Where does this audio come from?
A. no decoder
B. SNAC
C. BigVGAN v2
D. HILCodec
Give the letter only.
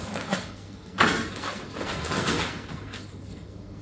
B